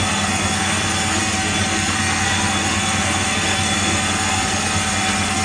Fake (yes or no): yes